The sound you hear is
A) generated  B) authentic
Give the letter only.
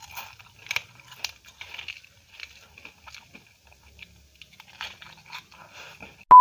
B